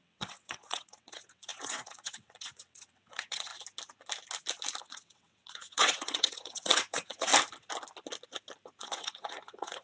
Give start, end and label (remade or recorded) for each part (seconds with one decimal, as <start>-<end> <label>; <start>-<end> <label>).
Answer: 0.0-3.5 remade; 3.5-4.8 recorded; 4.8-7.3 remade; 7.3-8.8 recorded; 8.8-9.8 remade